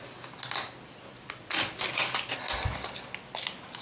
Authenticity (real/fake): real